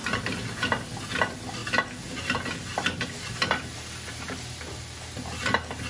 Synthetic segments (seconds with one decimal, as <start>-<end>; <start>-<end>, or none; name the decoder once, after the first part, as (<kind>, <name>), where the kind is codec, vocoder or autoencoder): none